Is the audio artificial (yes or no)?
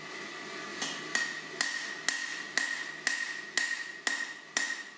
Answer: no